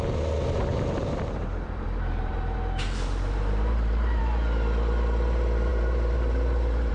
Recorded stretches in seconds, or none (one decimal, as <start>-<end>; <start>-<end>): 0.0-0.7; 4.2-5.7